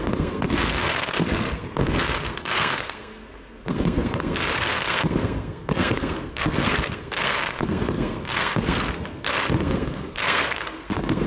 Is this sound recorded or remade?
remade